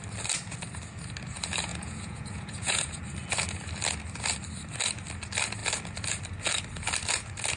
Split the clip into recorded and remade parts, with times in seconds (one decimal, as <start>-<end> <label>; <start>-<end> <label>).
0.0-1.7 recorded; 1.7-3.0 remade; 3.0-7.6 recorded